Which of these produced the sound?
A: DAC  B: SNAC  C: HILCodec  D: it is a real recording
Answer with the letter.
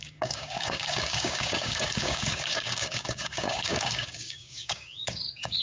A